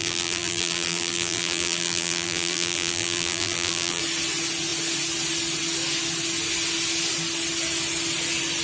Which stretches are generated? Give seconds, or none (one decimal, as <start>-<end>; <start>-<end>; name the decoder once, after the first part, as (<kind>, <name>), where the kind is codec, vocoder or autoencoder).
0.0-4.0 (vocoder, BigVGAN v2)